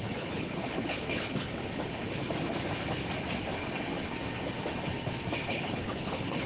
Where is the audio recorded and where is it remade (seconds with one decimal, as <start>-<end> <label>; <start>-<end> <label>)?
0.0-1.6 remade; 1.6-5.5 recorded; 5.5-6.5 remade